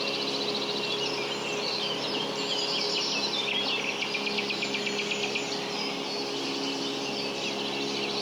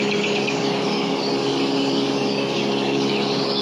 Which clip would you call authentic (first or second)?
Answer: first